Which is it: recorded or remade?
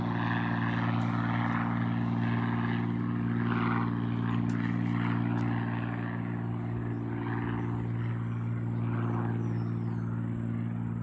recorded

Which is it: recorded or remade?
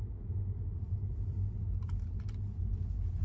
recorded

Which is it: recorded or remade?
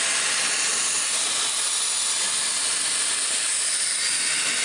recorded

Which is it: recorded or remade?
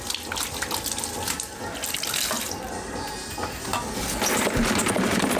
recorded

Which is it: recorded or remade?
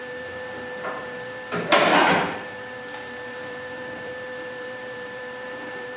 remade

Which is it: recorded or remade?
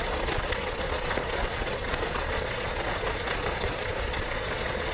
remade